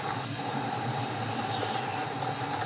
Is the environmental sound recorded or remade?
recorded